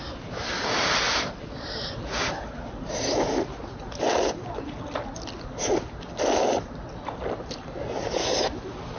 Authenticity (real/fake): real